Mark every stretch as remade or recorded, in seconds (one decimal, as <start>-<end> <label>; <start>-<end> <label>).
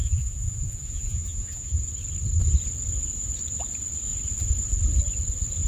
0.0-1.8 remade; 1.8-5.7 recorded